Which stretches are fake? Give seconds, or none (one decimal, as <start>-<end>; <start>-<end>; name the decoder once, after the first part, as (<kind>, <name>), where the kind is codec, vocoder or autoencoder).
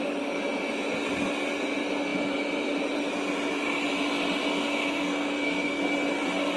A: 4.5-5.8 (codec, SNAC)